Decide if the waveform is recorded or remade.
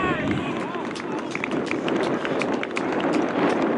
recorded